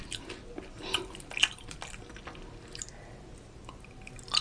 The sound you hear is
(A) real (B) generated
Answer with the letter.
A